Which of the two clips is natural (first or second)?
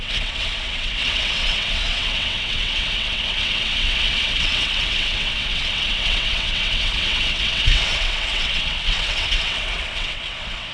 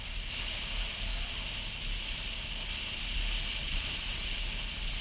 second